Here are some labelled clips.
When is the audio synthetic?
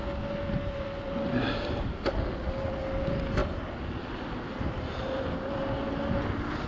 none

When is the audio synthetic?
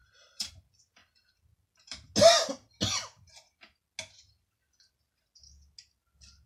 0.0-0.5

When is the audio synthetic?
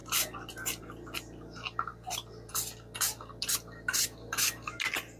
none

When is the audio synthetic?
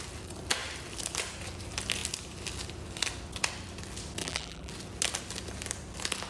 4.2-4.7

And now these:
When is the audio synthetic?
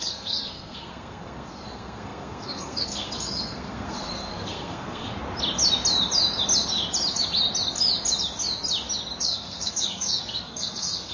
0.0-5.1; 9.2-11.1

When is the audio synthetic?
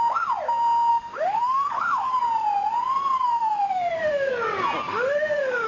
0.9-2.1; 3.2-4.3; 4.9-5.7